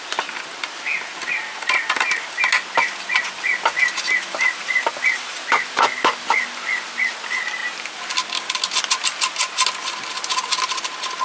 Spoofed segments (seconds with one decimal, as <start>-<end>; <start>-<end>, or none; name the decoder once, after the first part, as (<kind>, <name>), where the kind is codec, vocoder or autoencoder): none